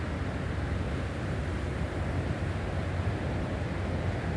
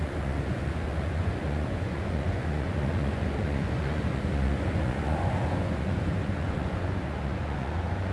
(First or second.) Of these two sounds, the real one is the first